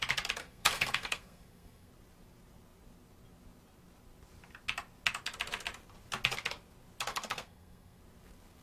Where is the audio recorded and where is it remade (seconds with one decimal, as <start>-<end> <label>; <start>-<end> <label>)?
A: 0.0-0.4 recorded; 0.4-1.9 remade; 1.9-7.1 recorded; 7.1-8.0 remade; 8.0-8.6 recorded